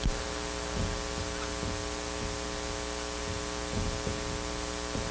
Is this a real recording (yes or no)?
yes